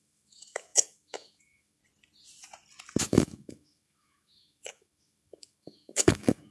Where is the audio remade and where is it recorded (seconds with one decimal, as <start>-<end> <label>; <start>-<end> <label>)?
0.0-1.8 remade; 1.8-3.0 recorded; 3.0-6.5 remade